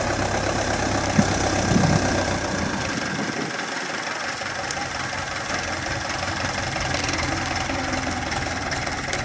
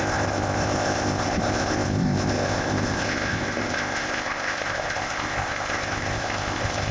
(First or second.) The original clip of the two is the first